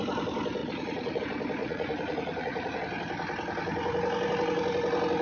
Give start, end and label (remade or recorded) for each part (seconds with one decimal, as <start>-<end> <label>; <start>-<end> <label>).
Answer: 0.0-0.6 recorded; 0.6-1.2 remade; 1.2-1.6 recorded; 1.6-2.8 remade; 2.8-5.2 recorded